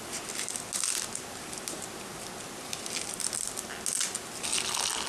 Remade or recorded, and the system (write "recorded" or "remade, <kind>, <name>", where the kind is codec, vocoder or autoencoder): recorded